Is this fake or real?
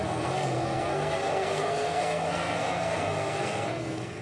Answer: fake